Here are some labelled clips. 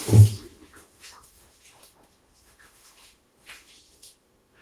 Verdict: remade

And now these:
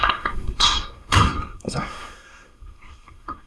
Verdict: remade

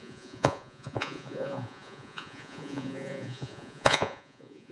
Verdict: remade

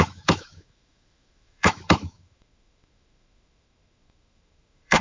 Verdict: remade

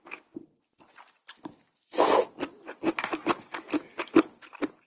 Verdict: recorded